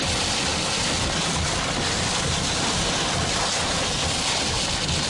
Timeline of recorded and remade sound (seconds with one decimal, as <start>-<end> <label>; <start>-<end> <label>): 0.0-5.1 recorded